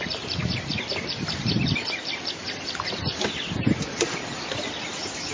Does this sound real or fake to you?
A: real